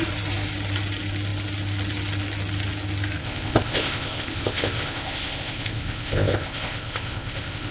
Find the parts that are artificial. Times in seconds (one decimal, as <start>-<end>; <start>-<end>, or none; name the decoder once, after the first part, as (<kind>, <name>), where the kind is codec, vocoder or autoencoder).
3.2-7.7 (codec, ZipCodec)